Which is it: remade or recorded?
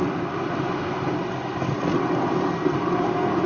recorded